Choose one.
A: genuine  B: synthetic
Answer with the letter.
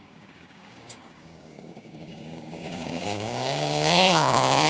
B